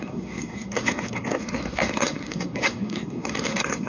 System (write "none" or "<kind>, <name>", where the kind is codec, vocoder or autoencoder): codec, SNAC